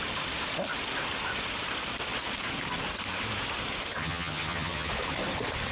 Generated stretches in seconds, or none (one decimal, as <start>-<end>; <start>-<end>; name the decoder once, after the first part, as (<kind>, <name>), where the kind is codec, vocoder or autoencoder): 4.0-4.9 (vocoder, HiFi-GAN)